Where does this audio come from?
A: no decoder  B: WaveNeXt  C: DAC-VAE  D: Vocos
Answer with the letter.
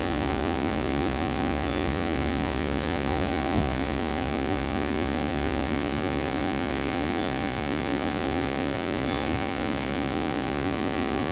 D